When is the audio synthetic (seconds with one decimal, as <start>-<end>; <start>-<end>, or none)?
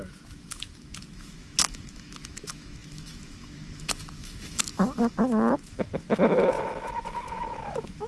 0.0-8.1